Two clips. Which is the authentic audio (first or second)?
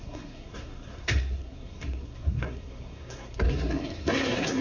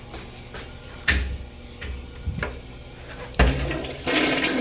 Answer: second